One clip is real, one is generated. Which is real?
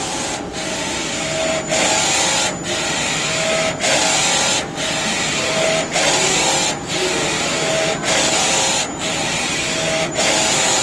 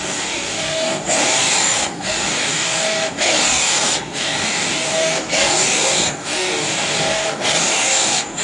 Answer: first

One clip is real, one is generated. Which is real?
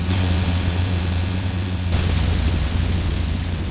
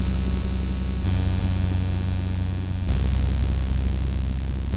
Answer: second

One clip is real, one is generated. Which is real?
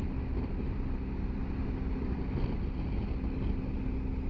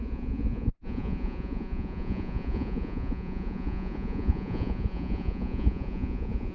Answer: first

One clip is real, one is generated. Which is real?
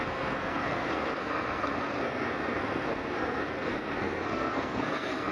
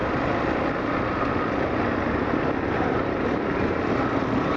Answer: second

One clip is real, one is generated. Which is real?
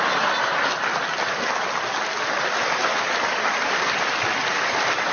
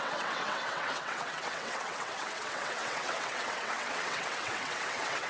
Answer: first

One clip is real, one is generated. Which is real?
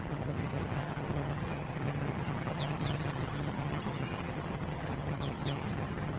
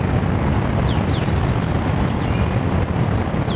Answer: second